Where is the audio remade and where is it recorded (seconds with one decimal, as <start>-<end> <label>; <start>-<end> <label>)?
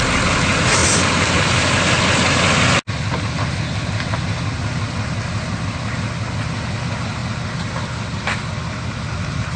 0.0-9.6 recorded